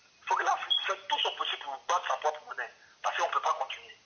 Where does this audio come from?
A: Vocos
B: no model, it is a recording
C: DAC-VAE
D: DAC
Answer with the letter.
B